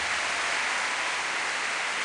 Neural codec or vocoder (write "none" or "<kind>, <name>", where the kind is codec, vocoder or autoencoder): none